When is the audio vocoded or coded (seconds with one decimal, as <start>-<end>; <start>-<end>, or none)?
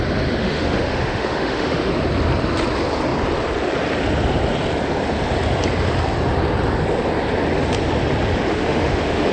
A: 0.4-1.9; 8.5-9.3